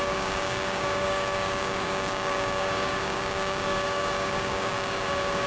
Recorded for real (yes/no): no